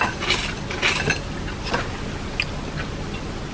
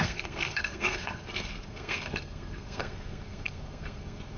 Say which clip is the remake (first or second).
second